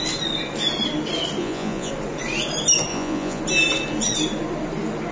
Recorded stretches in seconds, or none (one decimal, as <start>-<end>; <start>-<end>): 0.0-1.4; 1.9-2.9; 3.4-5.1